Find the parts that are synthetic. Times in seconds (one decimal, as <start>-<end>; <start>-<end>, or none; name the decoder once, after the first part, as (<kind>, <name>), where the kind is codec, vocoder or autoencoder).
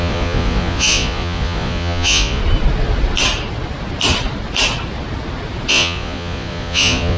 0.0-2.4 (vocoder, Vocos); 5.7-7.2